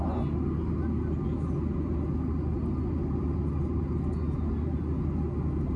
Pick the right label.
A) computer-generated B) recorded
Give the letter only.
B